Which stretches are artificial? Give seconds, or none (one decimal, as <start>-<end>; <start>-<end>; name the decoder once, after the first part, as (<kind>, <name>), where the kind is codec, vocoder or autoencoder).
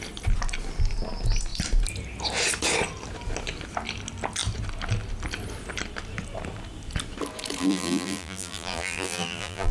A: 7.6-9.7 (vocoder, BigVGAN v2)